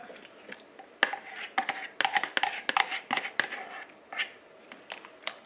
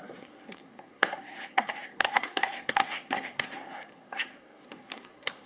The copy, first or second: second